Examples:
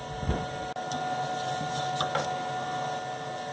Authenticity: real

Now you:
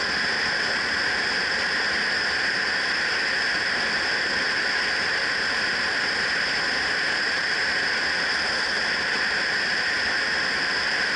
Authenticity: real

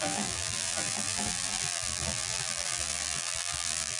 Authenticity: fake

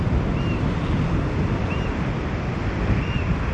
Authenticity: real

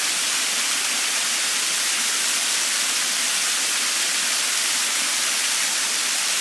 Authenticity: real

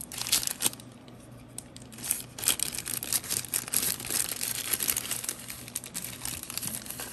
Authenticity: real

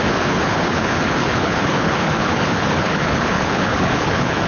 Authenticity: fake